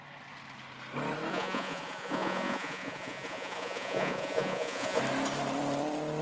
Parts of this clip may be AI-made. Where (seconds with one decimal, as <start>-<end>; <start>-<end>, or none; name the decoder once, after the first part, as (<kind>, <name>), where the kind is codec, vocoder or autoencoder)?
1.3-5.0 (vocoder, Vocos)

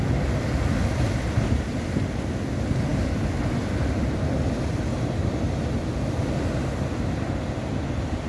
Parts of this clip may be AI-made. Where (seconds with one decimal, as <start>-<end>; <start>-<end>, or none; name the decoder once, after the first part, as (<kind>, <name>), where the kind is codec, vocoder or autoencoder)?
none

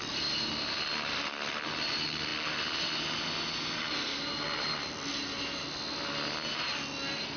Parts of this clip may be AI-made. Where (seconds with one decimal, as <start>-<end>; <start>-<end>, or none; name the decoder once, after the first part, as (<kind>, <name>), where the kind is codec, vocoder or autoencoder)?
none

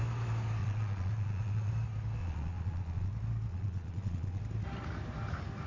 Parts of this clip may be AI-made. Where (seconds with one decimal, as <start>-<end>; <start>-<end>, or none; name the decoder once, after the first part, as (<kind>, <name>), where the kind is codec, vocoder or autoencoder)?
0.6-1.7 (vocoder, Vocos); 2.2-3.1; 3.5-4.4